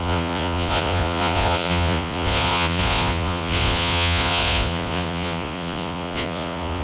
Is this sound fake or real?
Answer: fake